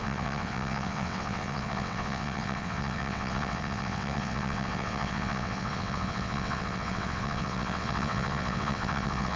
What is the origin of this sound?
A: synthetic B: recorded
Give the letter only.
A